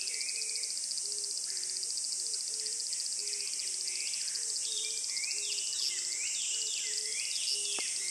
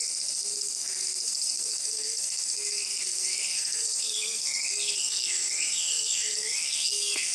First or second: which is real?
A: first